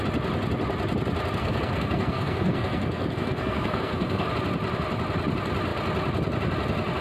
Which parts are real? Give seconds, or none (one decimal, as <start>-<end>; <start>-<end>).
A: 0.0-1.4; 4.3-7.0